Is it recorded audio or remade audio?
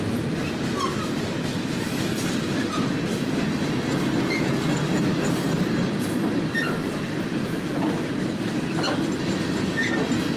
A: recorded